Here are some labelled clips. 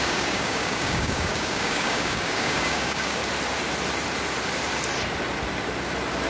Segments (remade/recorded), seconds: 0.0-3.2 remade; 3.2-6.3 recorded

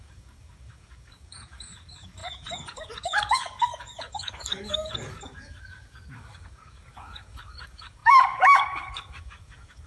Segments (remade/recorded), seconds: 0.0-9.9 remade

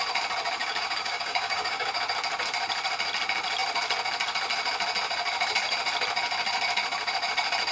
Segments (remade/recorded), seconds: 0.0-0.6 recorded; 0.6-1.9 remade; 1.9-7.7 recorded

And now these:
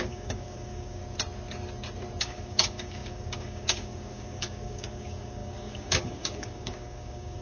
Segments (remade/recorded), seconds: 0.0-1.0 remade; 1.0-2.2 recorded; 2.2-7.4 remade

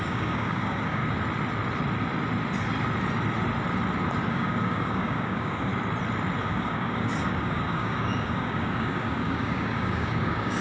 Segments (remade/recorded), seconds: 0.0-1.0 remade; 1.0-4.3 recorded; 4.3-5.7 remade; 5.7-6.4 recorded; 6.4-10.6 remade

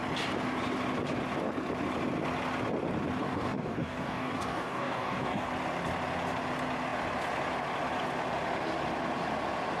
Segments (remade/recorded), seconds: 0.0-3.2 recorded; 3.2-5.5 remade; 5.5-9.8 recorded